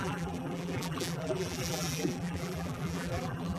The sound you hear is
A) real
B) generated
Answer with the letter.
B